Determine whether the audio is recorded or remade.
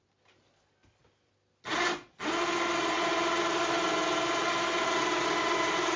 recorded